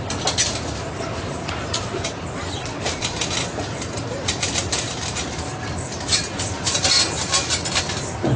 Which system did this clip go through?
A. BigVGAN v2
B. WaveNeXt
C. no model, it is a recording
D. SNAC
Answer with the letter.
C